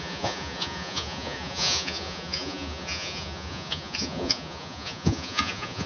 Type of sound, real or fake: fake